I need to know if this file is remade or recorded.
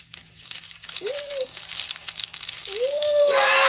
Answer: remade